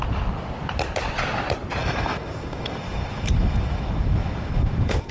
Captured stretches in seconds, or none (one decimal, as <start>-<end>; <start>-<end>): 0.0-1.8